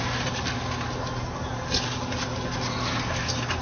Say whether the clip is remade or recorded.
recorded